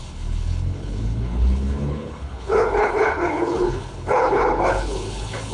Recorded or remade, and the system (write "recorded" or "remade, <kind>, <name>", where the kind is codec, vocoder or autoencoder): remade, codec, HILCodec